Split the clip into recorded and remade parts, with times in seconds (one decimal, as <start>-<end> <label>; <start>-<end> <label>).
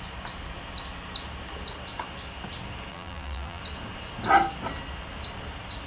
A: 0.0-2.9 recorded; 2.9-3.6 remade; 3.6-5.9 recorded